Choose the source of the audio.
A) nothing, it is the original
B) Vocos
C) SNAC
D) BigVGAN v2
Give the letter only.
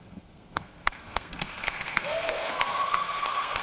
C